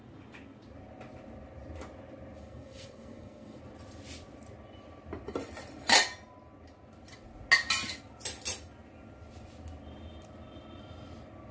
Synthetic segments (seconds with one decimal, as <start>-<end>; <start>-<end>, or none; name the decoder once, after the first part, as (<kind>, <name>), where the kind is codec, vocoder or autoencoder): 2.4-3.6 (codec, SNAC)